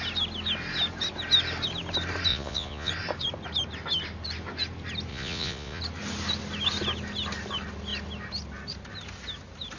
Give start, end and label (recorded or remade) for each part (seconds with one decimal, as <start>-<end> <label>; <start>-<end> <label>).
0.0-2.3 recorded; 2.3-2.9 remade; 2.9-5.1 recorded; 5.1-5.8 remade; 5.8-9.8 recorded